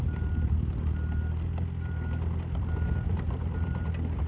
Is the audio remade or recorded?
recorded